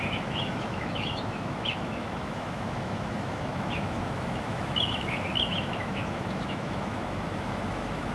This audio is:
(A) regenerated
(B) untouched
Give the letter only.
A